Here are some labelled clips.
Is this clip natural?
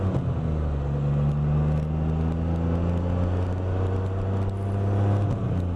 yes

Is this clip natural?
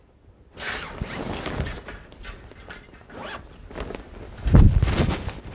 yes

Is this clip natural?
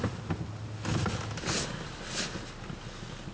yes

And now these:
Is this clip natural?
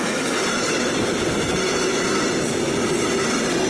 yes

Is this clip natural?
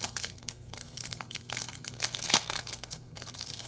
no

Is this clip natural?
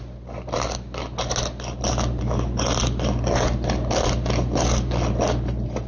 yes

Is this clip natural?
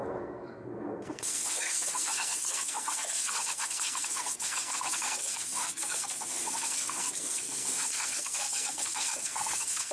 no